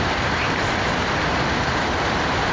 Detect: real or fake real